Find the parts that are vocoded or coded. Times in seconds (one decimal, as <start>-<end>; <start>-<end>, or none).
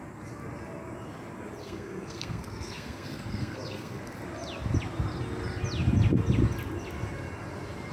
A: 1.6-4.0